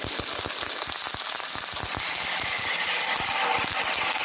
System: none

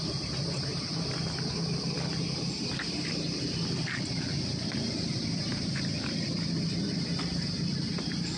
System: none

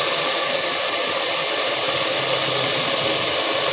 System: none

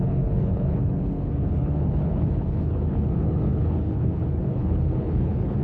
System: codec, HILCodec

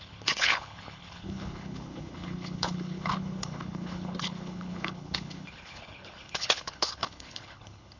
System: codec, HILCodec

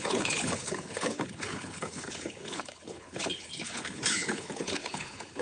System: codec, HILCodec